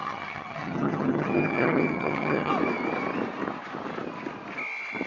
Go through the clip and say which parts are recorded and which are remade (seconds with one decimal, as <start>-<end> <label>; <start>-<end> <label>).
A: 0.0-2.5 remade; 2.5-5.1 recorded